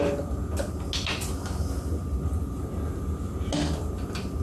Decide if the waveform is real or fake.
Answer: real